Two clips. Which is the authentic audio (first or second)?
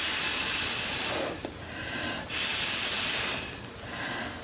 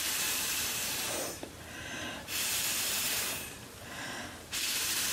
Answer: first